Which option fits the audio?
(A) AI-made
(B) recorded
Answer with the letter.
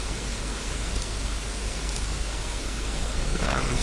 A